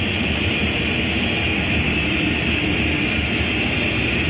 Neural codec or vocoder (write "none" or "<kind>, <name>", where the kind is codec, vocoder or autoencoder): none